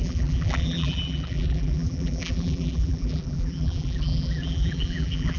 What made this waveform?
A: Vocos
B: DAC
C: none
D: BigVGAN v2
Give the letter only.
D